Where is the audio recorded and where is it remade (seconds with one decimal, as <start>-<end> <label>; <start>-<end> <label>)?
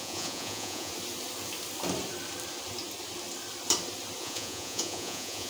0.0-0.9 remade; 0.9-4.2 recorded; 4.2-5.5 remade